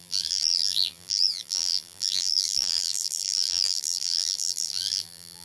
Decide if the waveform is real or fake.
fake